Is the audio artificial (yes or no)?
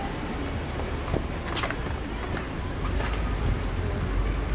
no